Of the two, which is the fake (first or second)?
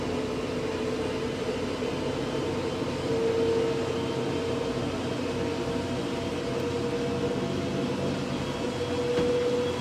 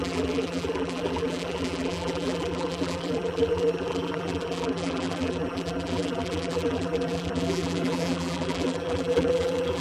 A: second